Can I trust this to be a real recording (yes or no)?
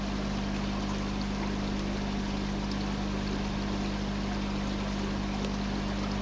yes